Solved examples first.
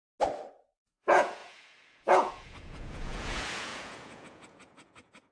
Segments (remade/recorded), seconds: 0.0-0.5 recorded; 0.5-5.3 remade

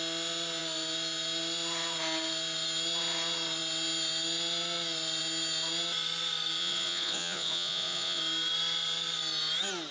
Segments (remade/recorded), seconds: 0.0-6.6 recorded; 6.6-8.2 remade; 8.2-9.9 recorded

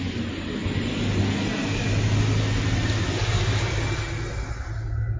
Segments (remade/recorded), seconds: 0.0-5.2 recorded

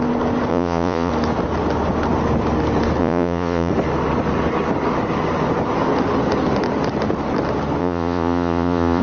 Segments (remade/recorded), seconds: 0.0-0.5 recorded; 0.5-1.1 remade; 1.1-3.0 recorded; 3.0-3.7 remade; 3.7-7.8 recorded; 7.8-9.0 remade

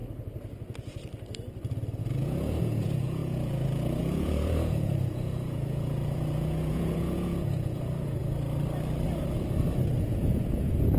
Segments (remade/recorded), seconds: 0.0-2.0 recorded; 2.0-8.2 remade; 8.2-10.0 recorded; 10.0-11.0 remade

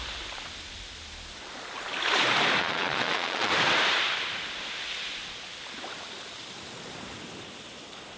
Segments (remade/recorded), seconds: 0.0-2.6 recorded; 2.6-3.5 remade; 3.5-8.2 recorded

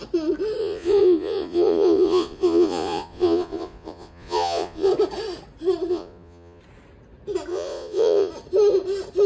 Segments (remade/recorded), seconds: 0.0-0.6 recorded; 0.6-4.9 remade; 4.9-5.9 recorded; 5.9-6.6 remade; 6.6-7.5 recorded; 7.5-8.3 remade; 8.3-9.3 recorded